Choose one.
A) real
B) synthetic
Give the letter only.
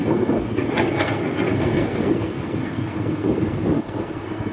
B